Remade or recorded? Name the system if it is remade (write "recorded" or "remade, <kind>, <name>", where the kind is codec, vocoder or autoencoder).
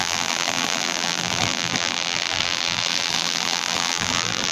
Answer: remade, vocoder, BigVGAN v2